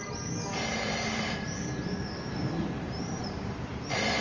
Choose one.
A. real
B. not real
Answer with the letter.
B